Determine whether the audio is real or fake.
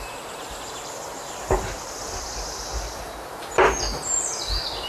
real